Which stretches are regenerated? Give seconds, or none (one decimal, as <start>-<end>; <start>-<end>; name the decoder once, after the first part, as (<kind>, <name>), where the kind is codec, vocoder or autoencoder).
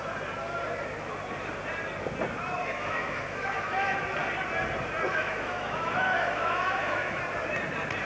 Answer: 2.6-4.0 (autoencoder, DAC-VAE); 5.1-7.2